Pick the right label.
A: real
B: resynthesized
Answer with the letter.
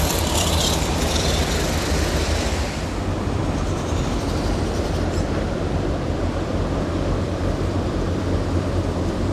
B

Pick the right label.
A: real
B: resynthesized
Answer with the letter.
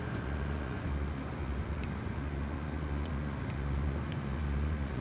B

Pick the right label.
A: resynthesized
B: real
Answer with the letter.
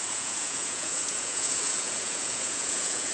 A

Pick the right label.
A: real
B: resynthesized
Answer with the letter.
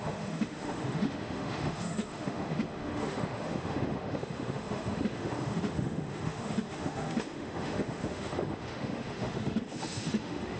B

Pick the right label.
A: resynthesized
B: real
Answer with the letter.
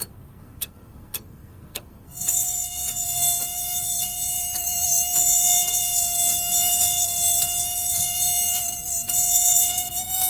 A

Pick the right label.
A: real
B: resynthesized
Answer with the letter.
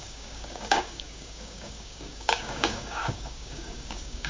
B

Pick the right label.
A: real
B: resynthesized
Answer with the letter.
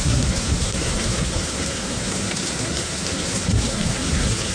B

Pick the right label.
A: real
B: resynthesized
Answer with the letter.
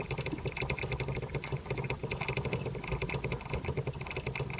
A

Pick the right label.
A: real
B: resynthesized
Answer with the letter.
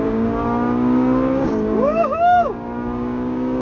B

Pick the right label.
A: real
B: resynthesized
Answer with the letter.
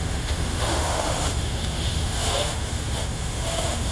B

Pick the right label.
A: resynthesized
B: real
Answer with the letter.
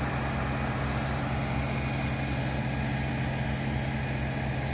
B